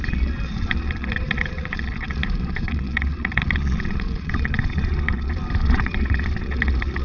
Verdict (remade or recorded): remade